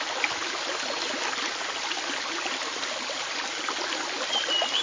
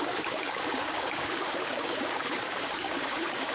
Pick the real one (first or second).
first